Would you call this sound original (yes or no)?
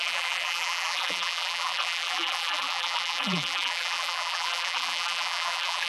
no